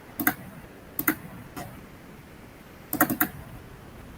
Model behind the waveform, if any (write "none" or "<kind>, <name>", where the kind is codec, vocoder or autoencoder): none